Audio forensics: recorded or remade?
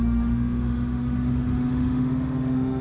remade